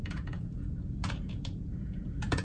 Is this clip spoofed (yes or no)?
yes